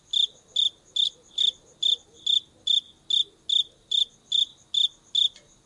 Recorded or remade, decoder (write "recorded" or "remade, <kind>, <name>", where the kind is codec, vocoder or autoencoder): recorded